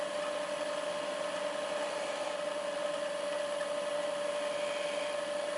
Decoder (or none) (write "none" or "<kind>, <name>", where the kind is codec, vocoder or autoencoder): none